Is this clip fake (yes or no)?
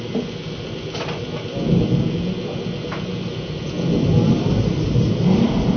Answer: no